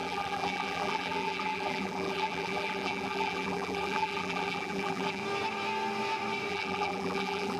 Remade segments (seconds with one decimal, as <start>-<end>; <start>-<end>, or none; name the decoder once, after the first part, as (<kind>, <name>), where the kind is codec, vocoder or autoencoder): 0.0-5.2 (vocoder, BigVGAN v2); 6.5-7.6